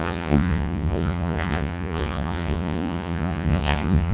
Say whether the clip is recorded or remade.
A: remade